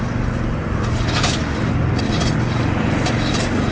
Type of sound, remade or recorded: recorded